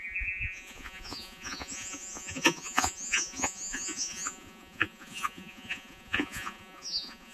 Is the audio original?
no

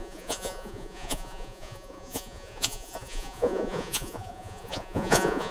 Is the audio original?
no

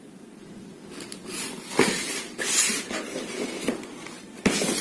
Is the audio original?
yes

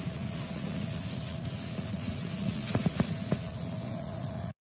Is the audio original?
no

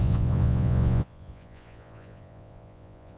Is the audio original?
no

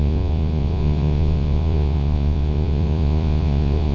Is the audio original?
no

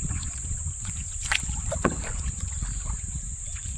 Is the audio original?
no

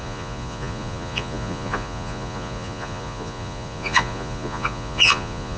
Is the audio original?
no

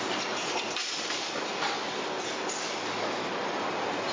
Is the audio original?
yes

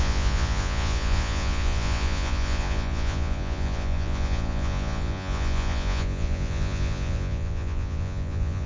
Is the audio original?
no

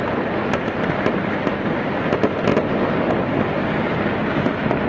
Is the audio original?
yes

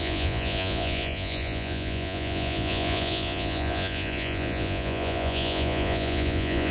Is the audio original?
no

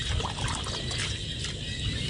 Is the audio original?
yes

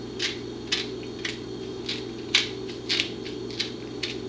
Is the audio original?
yes